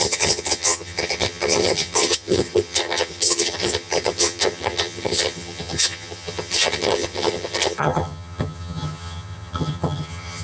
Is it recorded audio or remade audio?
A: remade